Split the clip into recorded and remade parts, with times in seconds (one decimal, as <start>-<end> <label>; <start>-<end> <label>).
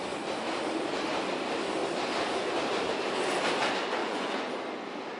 0.0-4.0 recorded; 4.0-4.5 remade; 4.5-5.2 recorded